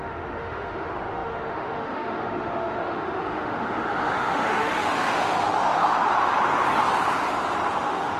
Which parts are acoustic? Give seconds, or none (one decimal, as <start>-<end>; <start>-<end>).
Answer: 6.1-7.7